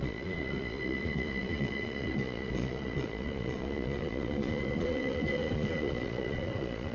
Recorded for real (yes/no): no